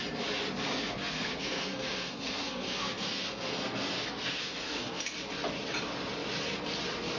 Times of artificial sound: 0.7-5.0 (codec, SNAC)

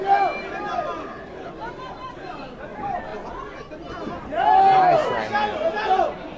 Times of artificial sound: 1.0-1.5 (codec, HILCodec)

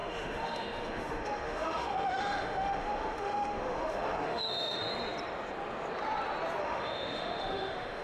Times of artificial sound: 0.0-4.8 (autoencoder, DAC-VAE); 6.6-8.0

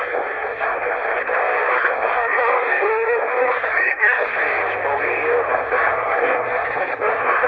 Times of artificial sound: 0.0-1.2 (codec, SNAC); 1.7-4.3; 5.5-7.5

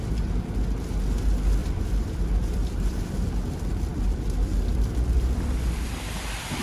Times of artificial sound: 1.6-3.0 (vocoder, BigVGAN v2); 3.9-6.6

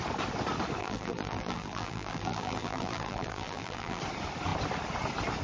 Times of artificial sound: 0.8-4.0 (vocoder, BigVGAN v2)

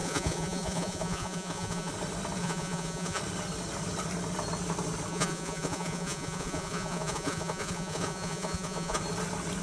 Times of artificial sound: 0.0-1.9 (vocoder, Vocos); 2.4-3.2; 5.1-9.0